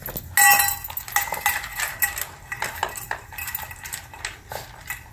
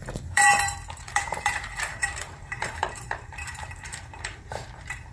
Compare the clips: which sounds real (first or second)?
first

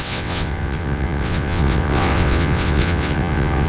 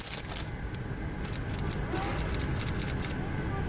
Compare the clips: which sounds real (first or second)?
second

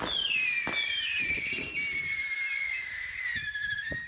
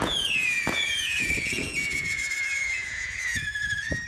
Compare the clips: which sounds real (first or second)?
first